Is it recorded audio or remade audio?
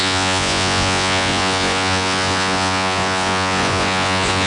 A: remade